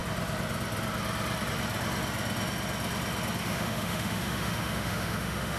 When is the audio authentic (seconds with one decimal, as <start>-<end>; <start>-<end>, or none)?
0.0-3.4

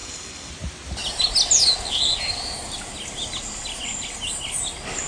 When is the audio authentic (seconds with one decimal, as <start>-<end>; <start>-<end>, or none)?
0.5-5.1

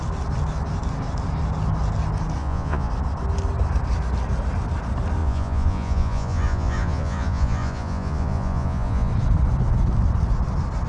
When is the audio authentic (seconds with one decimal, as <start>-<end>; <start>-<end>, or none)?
0.0-2.4; 2.9-5.2; 9.1-10.9

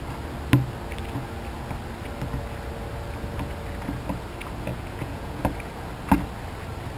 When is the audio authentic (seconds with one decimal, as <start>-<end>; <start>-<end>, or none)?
0.0-4.7; 5.4-7.0

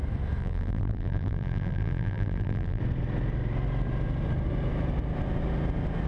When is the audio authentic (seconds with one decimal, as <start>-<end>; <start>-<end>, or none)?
0.0-0.4; 2.8-6.1

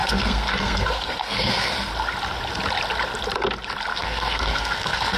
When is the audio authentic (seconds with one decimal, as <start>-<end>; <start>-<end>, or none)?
1.9-3.9